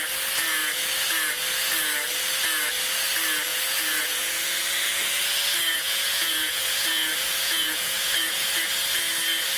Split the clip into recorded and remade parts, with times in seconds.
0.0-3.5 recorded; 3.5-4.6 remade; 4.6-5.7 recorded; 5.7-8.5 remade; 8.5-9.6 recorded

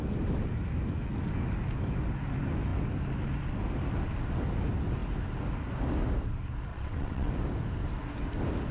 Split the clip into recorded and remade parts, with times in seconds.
0.0-6.7 recorded; 6.7-7.3 remade; 7.3-8.7 recorded

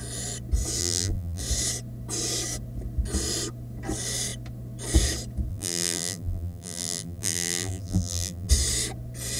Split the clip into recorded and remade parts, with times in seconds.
0.0-0.8 recorded; 0.8-1.4 remade; 1.4-5.5 recorded; 5.5-8.5 remade; 8.5-9.4 recorded

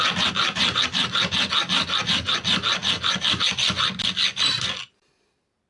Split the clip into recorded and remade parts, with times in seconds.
0.0-5.7 recorded

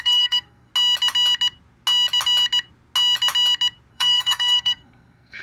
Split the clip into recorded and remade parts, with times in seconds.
0.0-0.7 remade; 0.7-3.9 recorded; 3.9-5.4 remade